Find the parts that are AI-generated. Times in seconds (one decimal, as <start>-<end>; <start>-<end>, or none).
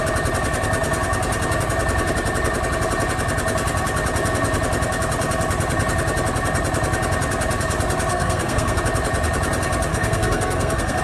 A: 8.1-8.8; 9.9-11.0